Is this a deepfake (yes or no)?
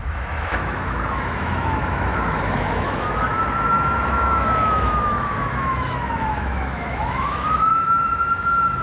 yes